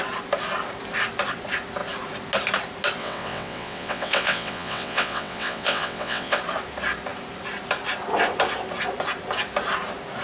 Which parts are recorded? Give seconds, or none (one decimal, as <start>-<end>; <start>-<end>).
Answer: 0.0-3.0; 6.4-10.2